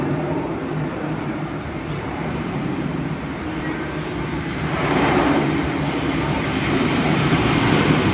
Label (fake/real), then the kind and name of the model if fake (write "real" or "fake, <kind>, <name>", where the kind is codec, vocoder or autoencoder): fake, vocoder, BigVGAN v2